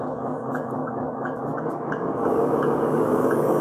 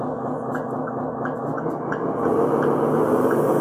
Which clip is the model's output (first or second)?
first